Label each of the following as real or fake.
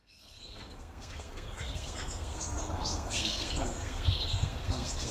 fake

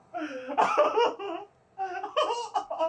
real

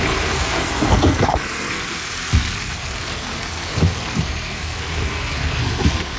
fake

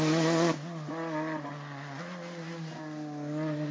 real